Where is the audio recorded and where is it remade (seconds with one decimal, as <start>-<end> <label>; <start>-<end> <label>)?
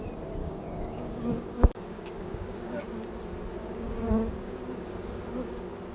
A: 0.0-0.4 recorded; 0.4-2.8 remade; 2.8-3.6 recorded; 3.6-5.5 remade; 5.5-5.9 recorded